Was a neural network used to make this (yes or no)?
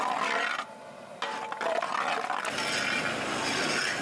no